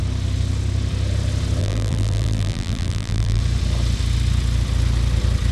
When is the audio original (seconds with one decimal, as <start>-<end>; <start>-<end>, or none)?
0.0-1.6; 3.4-5.5